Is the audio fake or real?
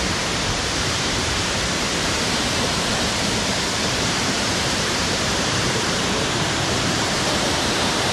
fake